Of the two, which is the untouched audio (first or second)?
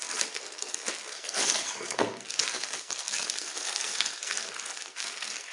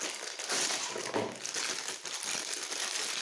second